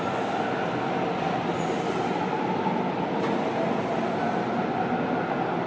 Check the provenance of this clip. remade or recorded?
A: recorded